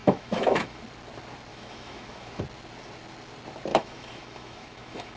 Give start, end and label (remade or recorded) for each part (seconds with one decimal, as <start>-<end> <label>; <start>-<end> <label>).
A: 0.0-0.8 remade; 0.8-1.5 recorded; 1.5-2.4 remade; 2.4-3.7 recorded; 3.7-5.2 remade